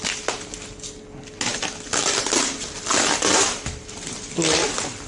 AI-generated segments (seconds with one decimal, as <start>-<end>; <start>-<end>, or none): none